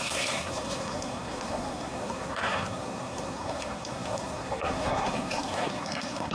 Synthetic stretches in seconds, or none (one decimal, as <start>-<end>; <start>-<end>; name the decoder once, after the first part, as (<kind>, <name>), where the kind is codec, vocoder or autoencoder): 0.0-6.3 (codec, SNAC)